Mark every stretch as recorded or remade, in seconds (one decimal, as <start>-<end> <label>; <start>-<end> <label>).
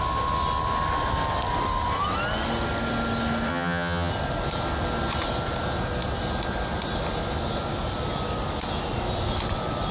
0.0-3.5 recorded; 3.5-4.1 remade; 4.1-9.9 recorded